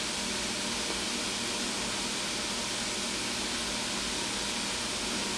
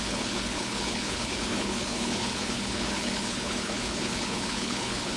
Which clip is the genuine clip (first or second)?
first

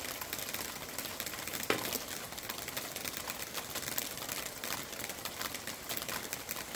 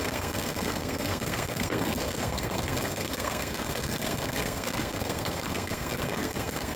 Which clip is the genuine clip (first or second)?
first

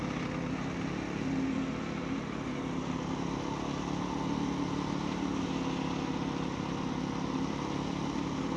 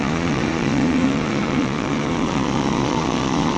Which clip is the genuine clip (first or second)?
first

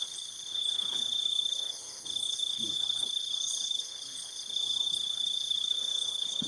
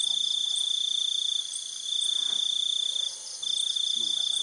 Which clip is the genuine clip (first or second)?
second